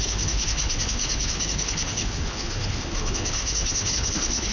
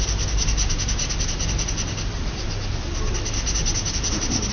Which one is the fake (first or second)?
first